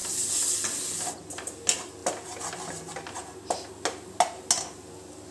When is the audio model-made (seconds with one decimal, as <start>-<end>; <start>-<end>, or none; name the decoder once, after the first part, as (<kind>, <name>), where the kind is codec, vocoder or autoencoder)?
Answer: none